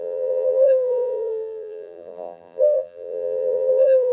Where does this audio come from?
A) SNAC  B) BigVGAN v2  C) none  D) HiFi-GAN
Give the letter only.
B